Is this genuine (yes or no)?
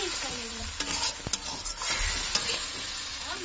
yes